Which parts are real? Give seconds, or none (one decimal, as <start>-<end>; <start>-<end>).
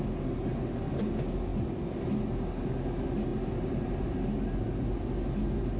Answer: 0.0-5.8